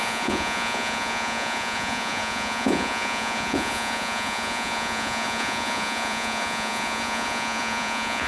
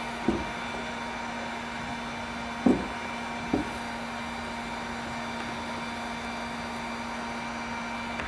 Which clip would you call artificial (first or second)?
first